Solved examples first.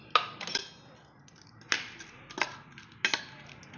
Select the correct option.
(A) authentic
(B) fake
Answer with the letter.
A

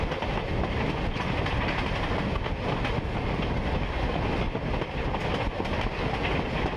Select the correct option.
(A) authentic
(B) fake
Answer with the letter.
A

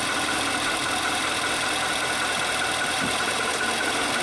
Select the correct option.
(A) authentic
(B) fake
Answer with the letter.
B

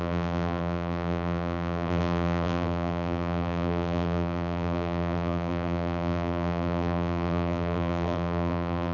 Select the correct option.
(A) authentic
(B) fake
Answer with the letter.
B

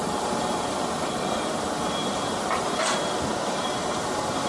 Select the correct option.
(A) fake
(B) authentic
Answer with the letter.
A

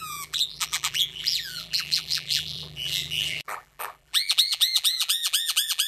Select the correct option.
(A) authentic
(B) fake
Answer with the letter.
B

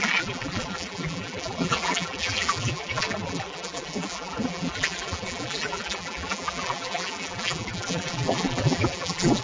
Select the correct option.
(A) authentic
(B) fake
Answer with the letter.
B